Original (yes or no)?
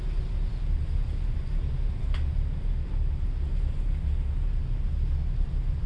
yes